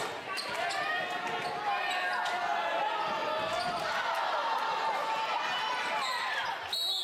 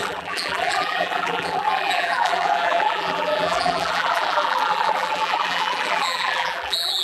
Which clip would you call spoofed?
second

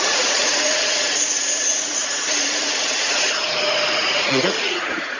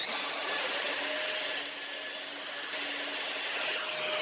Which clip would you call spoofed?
first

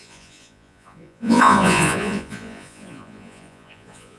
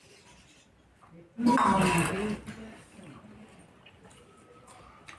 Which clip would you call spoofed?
first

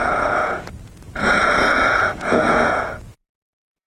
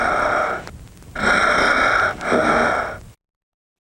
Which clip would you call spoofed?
first